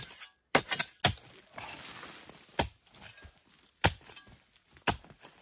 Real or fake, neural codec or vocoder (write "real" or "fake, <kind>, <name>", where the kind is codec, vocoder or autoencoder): real